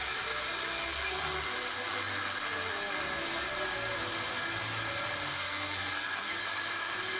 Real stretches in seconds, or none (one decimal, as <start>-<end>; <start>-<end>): 0.0-0.9; 1.4-5.3; 6.4-7.2

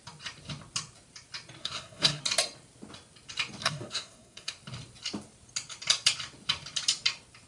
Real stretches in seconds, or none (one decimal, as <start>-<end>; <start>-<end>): 0.0-1.6; 2.2-3.6; 4.5-7.5

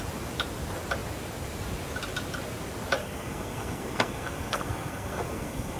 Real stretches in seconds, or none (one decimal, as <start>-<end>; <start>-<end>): 0.0-3.0

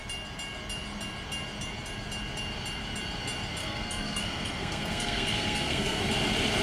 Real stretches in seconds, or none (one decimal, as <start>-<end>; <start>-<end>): 0.0-3.6; 6.0-6.6

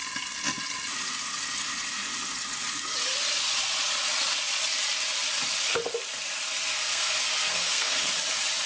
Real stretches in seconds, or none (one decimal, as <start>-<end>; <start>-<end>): 0.0-6.7; 8.1-8.7

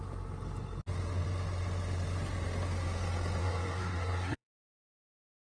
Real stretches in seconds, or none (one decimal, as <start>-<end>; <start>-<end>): 0.0-3.4; 4.9-5.5

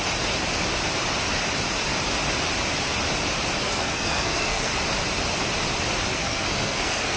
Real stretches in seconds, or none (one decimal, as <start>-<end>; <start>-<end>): 0.0-3.6; 4.7-6.1